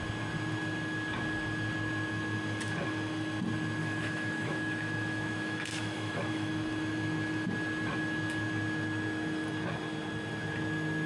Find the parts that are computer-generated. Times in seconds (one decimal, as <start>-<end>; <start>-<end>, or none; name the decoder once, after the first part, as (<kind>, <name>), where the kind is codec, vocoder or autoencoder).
3.8-6.5 (autoencoder, DAC-VAE)